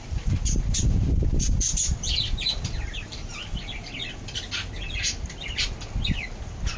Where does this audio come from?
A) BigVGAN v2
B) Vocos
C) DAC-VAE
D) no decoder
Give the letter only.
A